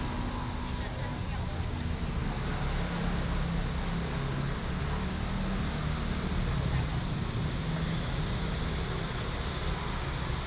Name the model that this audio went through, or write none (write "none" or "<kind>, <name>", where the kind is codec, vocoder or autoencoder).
none